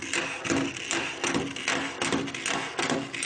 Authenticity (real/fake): real